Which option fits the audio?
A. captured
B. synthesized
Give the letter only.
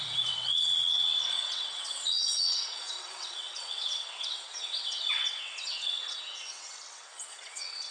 B